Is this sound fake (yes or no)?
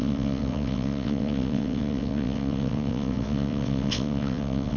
yes